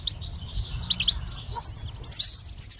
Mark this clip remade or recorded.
recorded